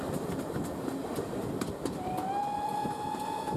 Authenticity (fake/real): real